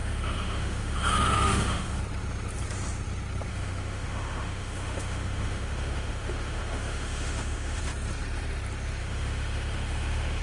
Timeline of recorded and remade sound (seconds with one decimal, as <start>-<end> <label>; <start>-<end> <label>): 0.0-2.0 remade; 2.0-3.5 recorded; 3.5-7.8 remade; 7.8-9.0 recorded; 9.0-10.4 remade